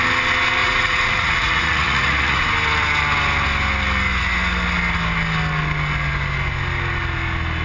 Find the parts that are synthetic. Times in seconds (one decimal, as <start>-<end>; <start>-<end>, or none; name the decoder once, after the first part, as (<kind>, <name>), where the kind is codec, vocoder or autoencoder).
0.6-2.4 (vocoder, Vocos)